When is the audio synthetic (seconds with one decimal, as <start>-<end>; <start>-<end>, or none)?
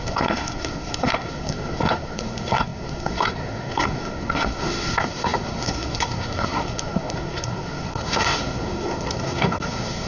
0.0-10.1